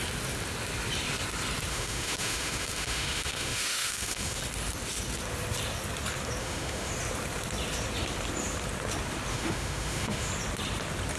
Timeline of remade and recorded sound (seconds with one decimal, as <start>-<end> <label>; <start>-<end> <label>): 0.0-1.7 recorded; 1.7-4.4 remade; 4.4-6.4 recorded; 6.4-6.9 remade; 6.9-9.3 recorded; 9.3-10.3 remade; 10.3-11.2 recorded